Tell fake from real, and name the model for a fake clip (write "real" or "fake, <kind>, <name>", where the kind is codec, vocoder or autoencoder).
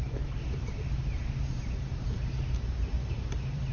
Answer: fake, vocoder, BigVGAN v2